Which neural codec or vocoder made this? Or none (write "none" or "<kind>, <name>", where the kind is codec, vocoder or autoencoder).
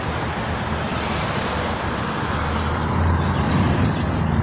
none